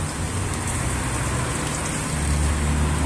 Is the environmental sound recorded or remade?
recorded